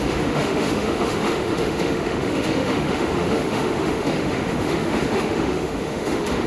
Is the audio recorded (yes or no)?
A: no